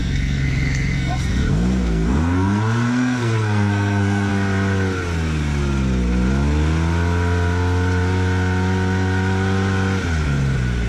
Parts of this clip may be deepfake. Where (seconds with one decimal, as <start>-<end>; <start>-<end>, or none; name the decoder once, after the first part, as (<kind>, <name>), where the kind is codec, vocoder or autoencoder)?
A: 0.0-4.3 (codec, SNAC)

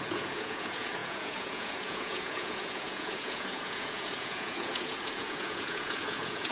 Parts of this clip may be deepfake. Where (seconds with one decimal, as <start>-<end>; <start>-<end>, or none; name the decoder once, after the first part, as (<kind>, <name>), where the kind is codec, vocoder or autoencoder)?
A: 0.0-6.5 (vocoder, Vocos)

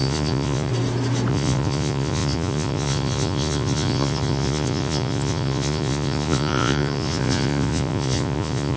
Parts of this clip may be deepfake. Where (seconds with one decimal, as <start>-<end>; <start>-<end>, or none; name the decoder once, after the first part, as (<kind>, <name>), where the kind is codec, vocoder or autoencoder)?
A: 0.0-0.7 (vocoder, Vocos); 1.3-8.8

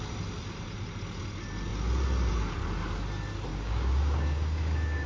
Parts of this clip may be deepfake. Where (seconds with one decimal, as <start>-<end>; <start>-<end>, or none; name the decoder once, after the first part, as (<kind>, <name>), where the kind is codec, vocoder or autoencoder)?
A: 3.5-5.1 (codec, DAC)